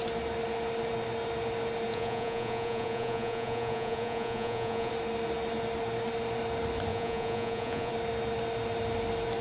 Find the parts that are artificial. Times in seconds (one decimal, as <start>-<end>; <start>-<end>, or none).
1.9-4.9; 6.9-7.9